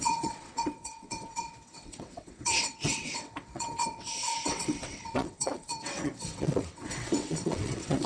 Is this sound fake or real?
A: fake